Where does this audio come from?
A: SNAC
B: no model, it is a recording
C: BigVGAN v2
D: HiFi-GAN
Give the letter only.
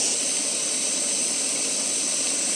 C